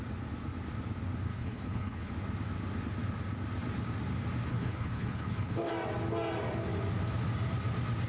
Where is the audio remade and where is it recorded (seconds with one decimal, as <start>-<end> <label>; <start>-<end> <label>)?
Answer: 0.0-1.3 recorded; 1.3-2.1 remade; 2.1-4.5 recorded; 4.5-5.7 remade; 5.7-8.1 recorded